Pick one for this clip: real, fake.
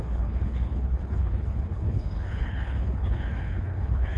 fake